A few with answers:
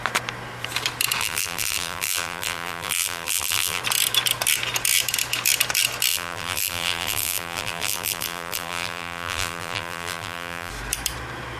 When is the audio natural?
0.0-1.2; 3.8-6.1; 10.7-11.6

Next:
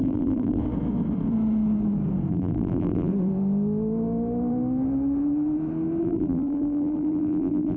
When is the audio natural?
0.6-2.3; 3.1-6.0

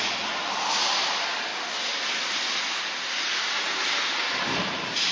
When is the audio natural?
1.5-4.6